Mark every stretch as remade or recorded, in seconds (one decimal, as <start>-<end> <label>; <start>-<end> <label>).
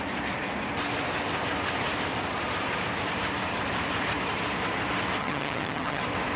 0.0-5.2 recorded; 5.2-6.0 remade; 6.0-6.4 recorded